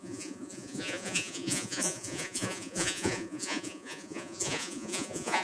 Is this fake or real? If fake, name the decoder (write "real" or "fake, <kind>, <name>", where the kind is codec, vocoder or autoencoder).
fake, vocoder, Vocos